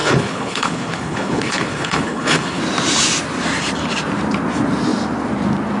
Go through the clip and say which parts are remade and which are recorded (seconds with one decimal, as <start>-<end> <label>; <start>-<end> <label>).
0.0-2.6 remade; 2.6-5.8 recorded